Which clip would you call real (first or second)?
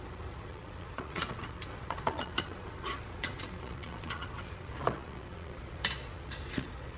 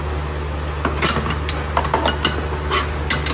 second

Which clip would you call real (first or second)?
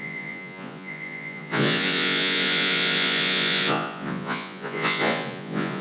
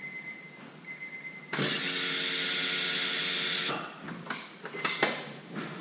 second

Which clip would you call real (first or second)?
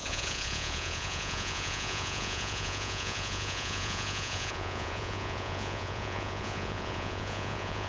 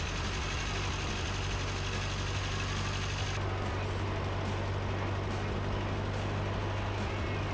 second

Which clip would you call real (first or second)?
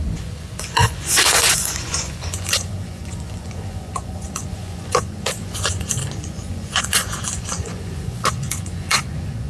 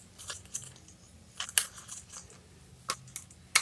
second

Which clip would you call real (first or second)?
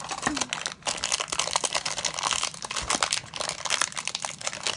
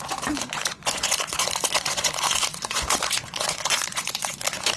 first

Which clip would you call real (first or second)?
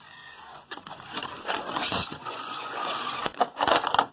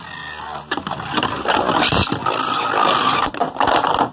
second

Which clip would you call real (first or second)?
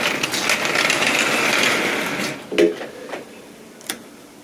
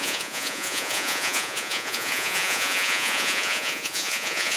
first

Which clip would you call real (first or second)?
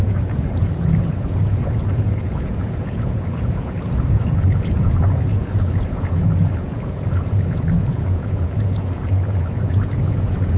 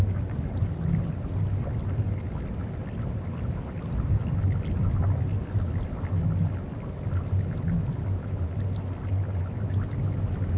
second